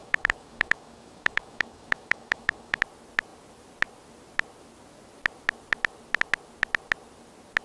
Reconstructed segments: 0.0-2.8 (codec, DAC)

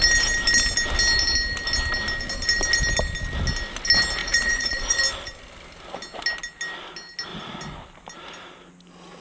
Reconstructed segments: 4.2-5.0 (vocoder, Vocos)

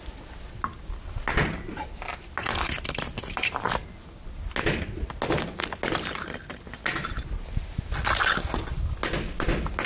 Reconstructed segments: none

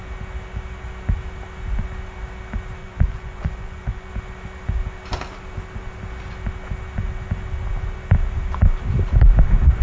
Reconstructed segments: 2.8-4.1 (vocoder, Vocos)

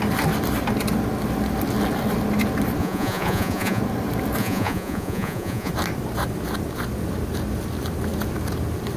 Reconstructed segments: 2.8-3.8 (vocoder, Vocos); 4.4-5.7

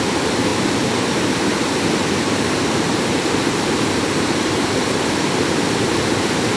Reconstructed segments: 0.0-6.6 (vocoder, BigVGAN v2)

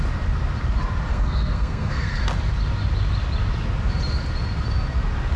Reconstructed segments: 1.1-2.2 (codec, SNAC)

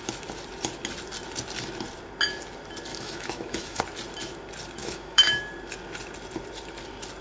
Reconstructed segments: 2.9-3.8 (autoencoder, DAC-VAE); 4.8-5.4